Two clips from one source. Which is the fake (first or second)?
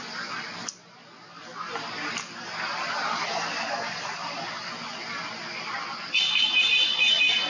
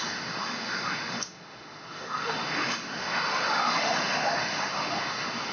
second